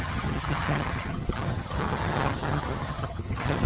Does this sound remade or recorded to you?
remade